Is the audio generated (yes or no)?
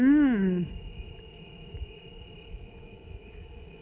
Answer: yes